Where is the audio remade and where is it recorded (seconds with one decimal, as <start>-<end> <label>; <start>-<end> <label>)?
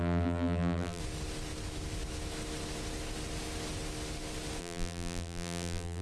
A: 0.0-1.0 remade; 1.0-4.6 recorded; 4.6-6.0 remade